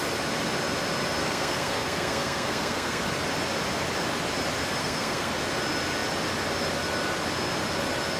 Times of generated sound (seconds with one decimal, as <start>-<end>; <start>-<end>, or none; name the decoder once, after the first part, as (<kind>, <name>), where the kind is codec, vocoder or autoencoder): 1.2-3.0 (codec, SNAC); 4.8-5.3